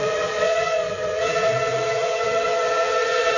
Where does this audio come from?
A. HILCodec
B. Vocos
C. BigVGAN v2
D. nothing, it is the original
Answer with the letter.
B